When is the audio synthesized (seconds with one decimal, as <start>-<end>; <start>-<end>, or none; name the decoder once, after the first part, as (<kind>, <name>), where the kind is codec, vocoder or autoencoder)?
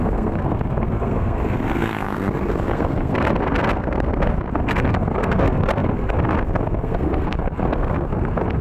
0.0-8.6 (codec, SNAC)